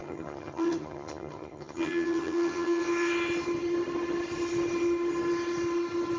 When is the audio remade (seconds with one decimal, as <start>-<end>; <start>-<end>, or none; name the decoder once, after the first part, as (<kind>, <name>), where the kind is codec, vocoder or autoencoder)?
0.0-2.8 (vocoder, HiFi-GAN)